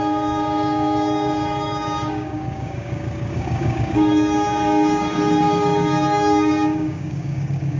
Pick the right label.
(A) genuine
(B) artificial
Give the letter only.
B